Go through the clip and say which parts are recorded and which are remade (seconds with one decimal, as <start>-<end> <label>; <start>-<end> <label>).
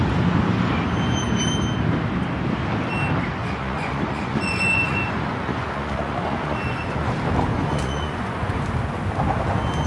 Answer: 0.0-3.4 recorded; 3.4-7.1 remade; 7.1-7.5 recorded; 7.5-8.6 remade; 8.6-9.9 recorded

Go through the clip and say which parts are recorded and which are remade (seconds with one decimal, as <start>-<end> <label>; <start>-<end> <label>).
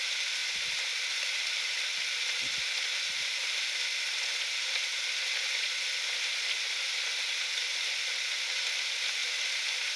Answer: 0.0-7.7 recorded; 7.7-8.3 remade; 8.3-10.0 recorded